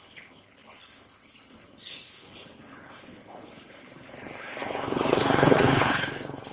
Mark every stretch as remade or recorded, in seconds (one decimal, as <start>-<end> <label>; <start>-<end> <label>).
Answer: 0.0-6.5 remade